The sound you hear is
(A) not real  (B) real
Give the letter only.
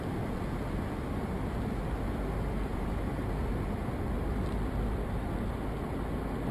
B